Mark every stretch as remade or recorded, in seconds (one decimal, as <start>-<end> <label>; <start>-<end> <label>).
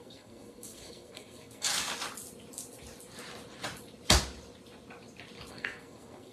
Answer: 0.0-1.7 remade; 1.7-5.5 recorded; 5.5-6.3 remade